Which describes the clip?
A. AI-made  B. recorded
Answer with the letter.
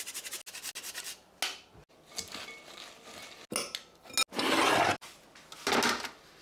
B